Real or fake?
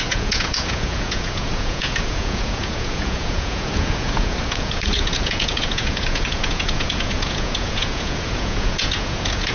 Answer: fake